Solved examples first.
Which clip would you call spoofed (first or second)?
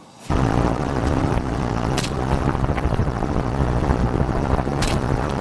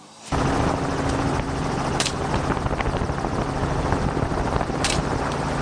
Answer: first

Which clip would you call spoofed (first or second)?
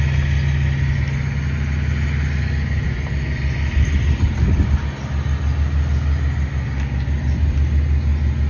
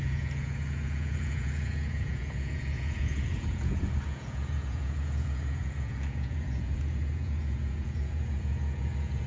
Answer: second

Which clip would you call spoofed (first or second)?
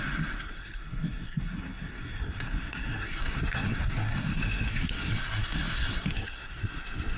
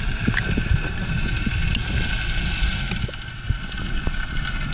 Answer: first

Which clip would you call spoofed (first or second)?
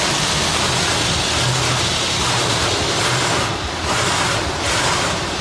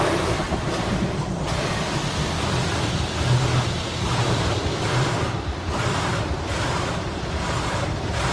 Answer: second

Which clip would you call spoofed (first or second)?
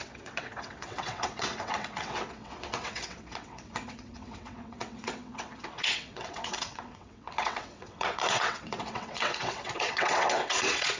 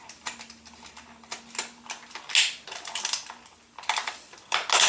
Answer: first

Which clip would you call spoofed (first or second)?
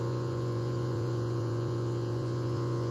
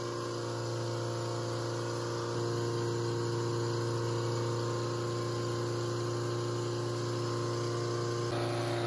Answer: first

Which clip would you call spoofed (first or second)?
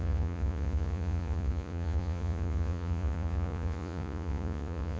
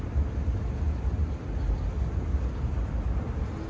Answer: first